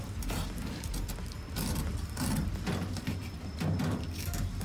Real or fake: real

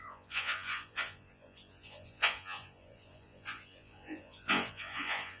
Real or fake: fake